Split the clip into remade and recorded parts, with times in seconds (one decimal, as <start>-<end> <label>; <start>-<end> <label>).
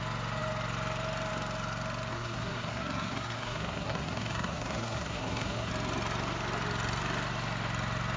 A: 0.0-2.1 recorded; 2.1-5.7 remade; 5.7-8.2 recorded